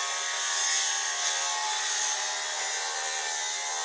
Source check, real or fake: real